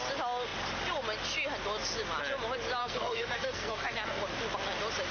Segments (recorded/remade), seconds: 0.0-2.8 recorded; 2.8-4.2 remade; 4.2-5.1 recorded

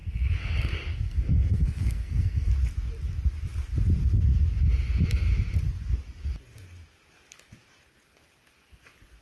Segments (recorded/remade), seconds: 0.0-2.5 remade; 2.5-9.2 recorded

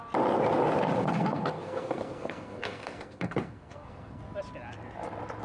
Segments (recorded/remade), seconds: 0.0-1.0 recorded; 1.0-4.2 remade; 4.2-5.4 recorded

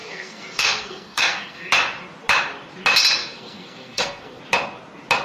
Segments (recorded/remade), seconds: 0.0-1.7 remade; 1.7-3.2 recorded; 3.2-4.4 remade; 4.4-5.2 recorded

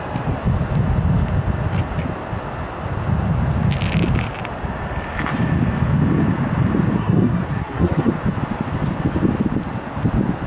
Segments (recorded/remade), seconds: 0.0-7.0 recorded; 7.0-8.1 remade; 8.1-10.5 recorded

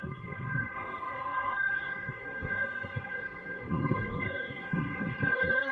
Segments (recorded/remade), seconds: 0.0-5.7 remade

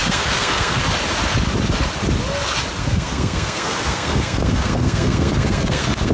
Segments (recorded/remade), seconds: 0.0-0.8 remade; 0.8-2.8 recorded; 2.8-6.1 remade